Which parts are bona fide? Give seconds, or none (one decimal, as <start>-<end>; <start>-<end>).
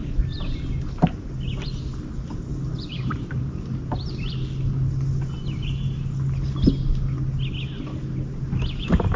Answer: 0.0-2.5; 3.6-9.2